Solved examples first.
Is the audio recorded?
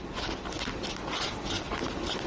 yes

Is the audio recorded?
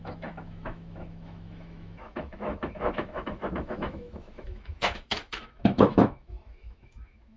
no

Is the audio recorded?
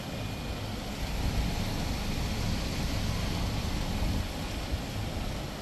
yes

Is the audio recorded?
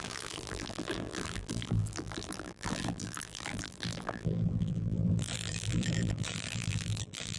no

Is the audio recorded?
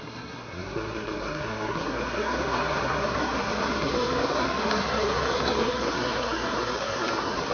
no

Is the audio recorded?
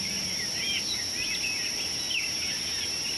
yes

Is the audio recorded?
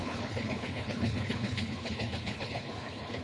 no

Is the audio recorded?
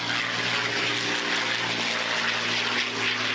yes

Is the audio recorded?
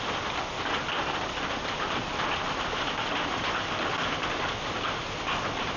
yes